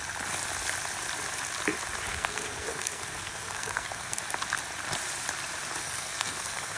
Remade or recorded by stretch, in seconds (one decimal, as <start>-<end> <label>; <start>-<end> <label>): 0.0-2.1 recorded; 2.1-4.2 remade; 4.2-5.8 recorded; 5.8-6.8 remade